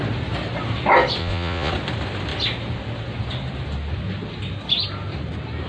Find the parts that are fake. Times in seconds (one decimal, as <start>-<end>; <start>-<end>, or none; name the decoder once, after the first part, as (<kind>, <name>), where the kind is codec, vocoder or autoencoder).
1.2-1.7 (vocoder, Vocos)